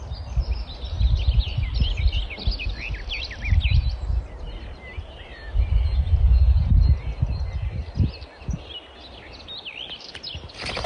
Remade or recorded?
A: recorded